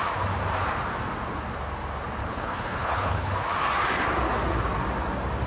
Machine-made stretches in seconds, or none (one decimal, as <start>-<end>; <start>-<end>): 2.2-3.3